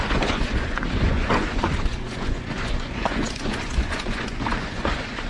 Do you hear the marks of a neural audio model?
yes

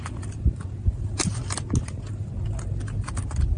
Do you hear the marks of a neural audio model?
no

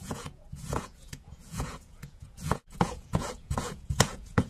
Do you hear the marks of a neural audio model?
yes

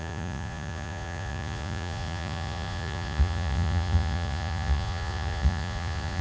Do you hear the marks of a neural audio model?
yes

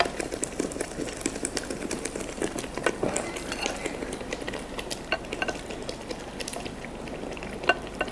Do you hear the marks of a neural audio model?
no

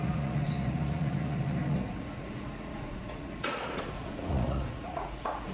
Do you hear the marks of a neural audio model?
yes